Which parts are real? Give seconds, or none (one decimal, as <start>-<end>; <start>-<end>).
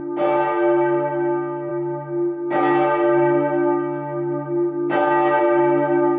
0.0-6.2